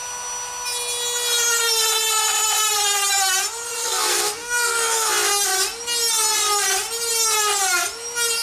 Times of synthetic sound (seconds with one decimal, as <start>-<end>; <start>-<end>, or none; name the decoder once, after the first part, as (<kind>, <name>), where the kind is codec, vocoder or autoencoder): 3.8-5.1 (codec, SNAC)

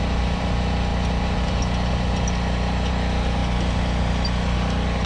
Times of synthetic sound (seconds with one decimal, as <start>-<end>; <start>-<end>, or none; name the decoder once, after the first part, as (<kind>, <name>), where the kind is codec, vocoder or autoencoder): none

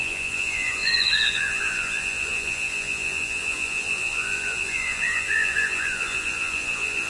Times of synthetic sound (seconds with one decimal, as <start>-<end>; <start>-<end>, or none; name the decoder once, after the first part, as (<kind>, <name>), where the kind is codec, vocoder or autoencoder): 0.0-7.1 (vocoder, Vocos)

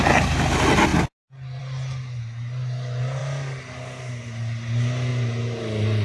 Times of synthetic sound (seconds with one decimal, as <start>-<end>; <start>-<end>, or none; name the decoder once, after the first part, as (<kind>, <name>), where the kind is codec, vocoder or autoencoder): none

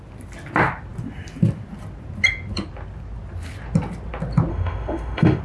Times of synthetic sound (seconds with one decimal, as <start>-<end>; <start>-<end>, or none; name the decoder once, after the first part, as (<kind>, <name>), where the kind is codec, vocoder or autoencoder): 4.5-5.4 (autoencoder, DAC-VAE)

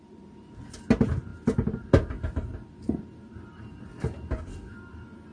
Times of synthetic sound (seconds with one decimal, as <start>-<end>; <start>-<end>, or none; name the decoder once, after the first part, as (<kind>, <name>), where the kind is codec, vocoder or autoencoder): none

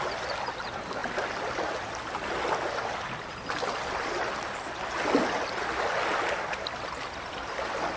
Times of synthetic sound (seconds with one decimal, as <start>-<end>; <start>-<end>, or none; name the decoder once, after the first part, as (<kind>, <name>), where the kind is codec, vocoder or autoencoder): none

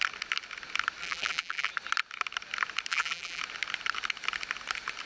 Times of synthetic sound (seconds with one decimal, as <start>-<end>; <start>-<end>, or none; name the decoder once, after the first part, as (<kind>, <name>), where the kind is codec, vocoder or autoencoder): 1.0-1.7 (vocoder, BigVGAN v2); 2.9-3.4